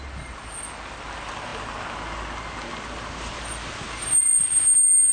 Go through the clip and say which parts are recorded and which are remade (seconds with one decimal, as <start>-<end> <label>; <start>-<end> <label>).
0.0-5.1 recorded